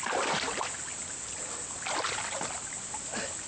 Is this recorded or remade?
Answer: recorded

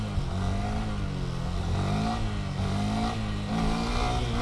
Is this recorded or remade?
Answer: recorded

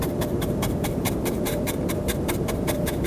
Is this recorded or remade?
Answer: remade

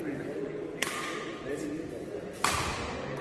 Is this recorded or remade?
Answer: recorded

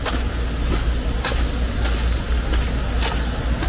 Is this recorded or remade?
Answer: recorded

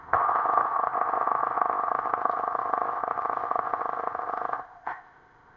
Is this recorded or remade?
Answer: remade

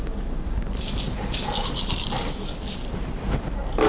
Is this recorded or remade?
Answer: remade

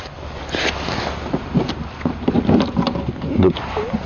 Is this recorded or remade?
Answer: recorded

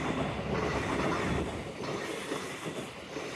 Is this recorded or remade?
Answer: recorded